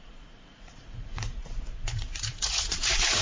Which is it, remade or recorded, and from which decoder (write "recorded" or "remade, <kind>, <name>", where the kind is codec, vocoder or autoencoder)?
remade, vocoder, Vocos